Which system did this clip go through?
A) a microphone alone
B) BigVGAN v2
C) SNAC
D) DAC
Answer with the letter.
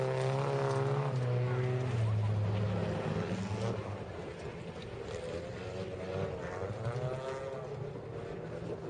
A